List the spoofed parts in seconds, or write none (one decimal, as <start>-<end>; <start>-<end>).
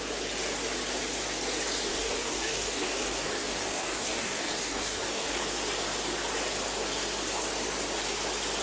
1.9-5.4